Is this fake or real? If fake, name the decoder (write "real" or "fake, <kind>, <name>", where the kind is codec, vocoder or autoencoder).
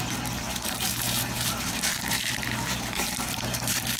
fake, vocoder, BigVGAN v2